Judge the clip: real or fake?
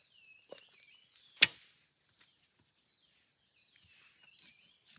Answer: real